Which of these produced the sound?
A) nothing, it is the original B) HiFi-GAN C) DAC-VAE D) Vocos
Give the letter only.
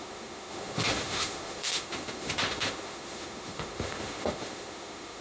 C